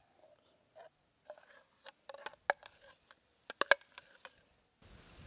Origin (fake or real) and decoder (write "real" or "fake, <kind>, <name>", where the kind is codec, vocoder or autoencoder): real